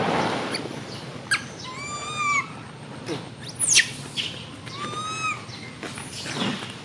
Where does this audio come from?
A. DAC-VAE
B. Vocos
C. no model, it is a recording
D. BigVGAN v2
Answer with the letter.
C